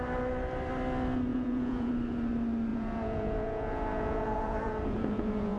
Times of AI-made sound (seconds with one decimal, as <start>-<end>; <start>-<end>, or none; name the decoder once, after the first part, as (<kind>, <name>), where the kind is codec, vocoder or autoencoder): 1.3-1.9 (vocoder, Vocos); 2.7-5.6